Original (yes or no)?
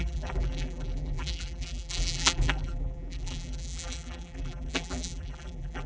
no